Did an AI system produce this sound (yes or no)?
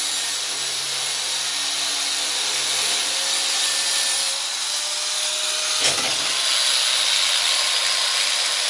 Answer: no